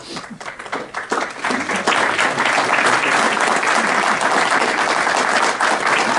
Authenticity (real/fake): real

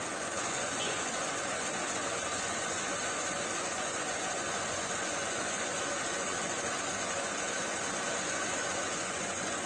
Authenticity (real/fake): fake